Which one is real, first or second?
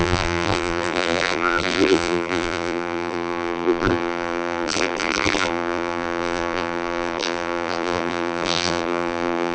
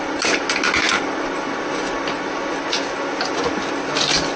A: second